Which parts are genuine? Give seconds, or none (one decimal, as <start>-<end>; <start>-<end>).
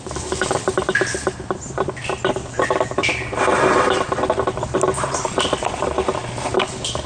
0.6-2.3; 3.1-6.6